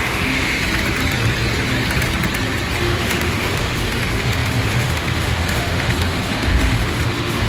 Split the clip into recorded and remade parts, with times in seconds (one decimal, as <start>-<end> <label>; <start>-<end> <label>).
0.0-0.6 remade; 0.6-2.8 recorded; 2.8-7.5 remade